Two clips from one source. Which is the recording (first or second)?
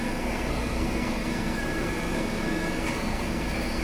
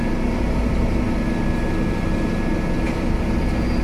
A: second